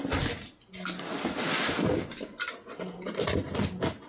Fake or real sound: real